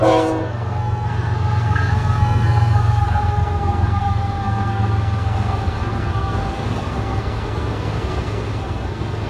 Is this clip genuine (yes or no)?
no